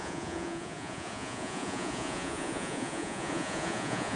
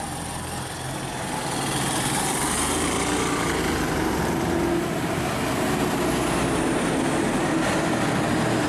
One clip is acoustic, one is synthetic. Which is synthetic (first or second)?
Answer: first